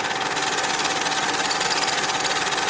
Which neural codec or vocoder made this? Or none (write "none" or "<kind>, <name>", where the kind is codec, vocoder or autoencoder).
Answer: none